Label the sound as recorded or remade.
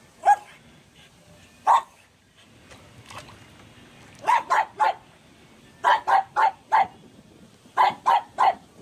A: recorded